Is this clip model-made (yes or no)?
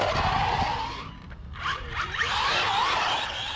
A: no